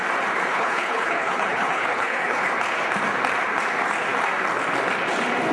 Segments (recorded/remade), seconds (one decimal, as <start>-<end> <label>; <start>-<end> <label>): 0.0-0.5 recorded; 0.5-2.5 remade; 2.5-5.5 recorded